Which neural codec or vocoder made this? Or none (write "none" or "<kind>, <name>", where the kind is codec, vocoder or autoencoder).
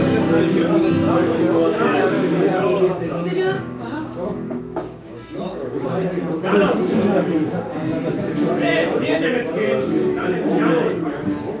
codec, DAC